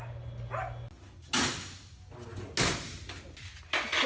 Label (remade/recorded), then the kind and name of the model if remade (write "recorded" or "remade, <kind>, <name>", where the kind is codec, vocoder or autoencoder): recorded